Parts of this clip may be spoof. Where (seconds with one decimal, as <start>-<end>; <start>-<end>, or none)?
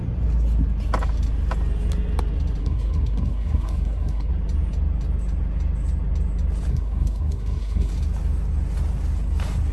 2.6-4.3; 6.7-7.9